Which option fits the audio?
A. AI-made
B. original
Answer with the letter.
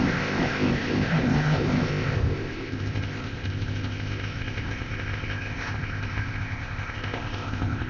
A